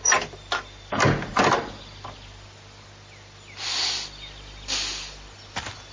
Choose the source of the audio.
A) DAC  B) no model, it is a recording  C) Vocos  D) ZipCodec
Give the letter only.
B